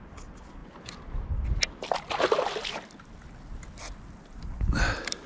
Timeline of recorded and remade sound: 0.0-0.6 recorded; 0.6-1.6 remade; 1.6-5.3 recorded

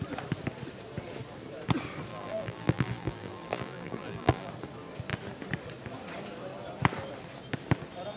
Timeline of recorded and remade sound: 0.0-2.1 recorded; 2.1-4.5 remade; 4.5-8.2 recorded